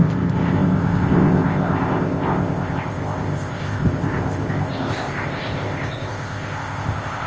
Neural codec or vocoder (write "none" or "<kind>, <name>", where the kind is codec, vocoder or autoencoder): codec, ZipCodec